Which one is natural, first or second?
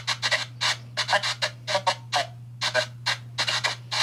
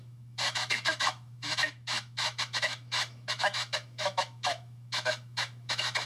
first